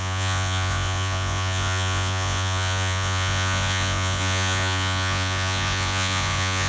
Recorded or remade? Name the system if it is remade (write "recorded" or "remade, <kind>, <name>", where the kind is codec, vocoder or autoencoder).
remade, vocoder, Vocos